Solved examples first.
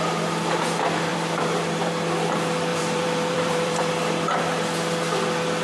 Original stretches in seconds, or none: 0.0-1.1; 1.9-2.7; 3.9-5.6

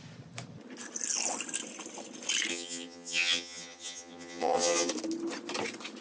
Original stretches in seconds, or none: 0.0-2.5; 4.9-6.0

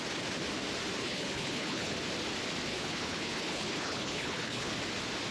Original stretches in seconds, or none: 0.0-1.0; 1.9-2.7; 4.7-5.3